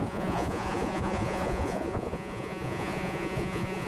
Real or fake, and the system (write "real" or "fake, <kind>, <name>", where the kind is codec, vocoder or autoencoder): fake, vocoder, Vocos